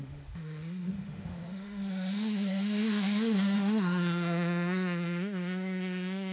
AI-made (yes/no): yes